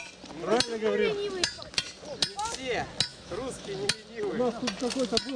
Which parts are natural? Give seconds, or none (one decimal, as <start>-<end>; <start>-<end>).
0.0-3.1; 3.7-5.4